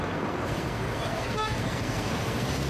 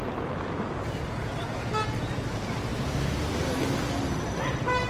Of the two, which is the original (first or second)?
second